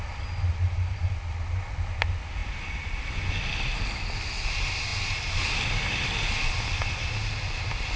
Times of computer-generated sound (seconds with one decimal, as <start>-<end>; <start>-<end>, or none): none